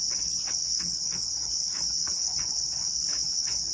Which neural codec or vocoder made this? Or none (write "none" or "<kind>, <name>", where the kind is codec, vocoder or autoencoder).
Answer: codec, HILCodec